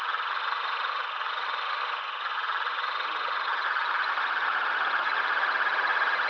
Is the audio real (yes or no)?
yes